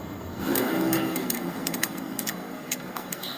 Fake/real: fake